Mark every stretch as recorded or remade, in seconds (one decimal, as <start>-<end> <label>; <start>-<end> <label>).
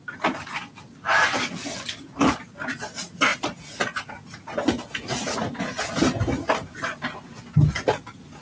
0.0-8.4 recorded